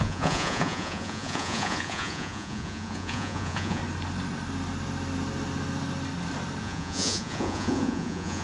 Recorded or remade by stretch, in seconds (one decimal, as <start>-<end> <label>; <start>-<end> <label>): 0.0-3.8 remade; 3.8-6.6 recorded; 6.6-8.4 remade